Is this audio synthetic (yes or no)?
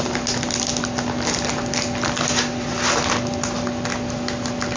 no